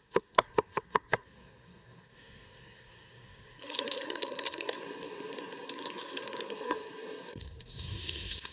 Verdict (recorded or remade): remade